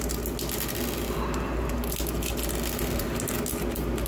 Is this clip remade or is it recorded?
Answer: recorded